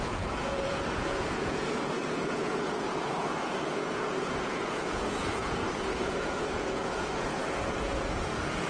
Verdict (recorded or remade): remade